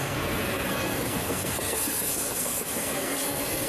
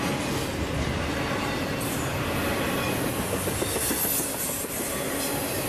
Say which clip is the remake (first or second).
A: first